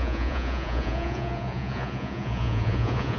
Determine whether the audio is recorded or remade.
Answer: remade